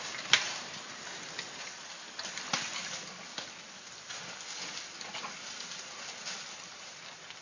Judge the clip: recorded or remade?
recorded